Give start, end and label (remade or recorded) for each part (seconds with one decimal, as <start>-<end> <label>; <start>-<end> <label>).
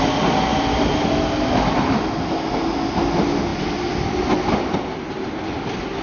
0.0-6.0 recorded